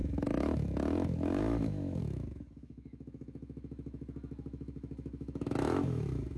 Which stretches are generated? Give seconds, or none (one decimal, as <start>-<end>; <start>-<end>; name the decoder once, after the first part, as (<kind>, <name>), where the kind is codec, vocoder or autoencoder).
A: 0.0-6.4 (autoencoder, DAC-VAE)